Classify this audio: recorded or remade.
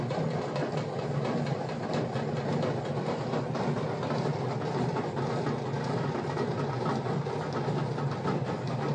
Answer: recorded